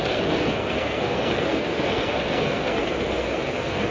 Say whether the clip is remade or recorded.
remade